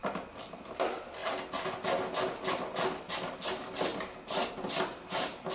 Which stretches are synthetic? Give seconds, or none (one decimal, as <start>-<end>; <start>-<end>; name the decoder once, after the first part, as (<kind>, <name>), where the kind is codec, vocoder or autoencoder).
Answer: none